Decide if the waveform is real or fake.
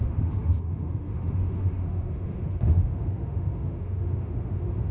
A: fake